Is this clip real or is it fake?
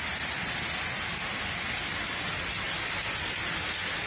real